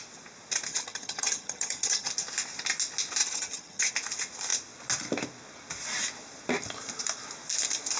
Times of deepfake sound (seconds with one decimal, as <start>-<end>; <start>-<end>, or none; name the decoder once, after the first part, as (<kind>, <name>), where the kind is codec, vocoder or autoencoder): 0.7-2.1 (vocoder, HiFi-GAN); 3.2-3.9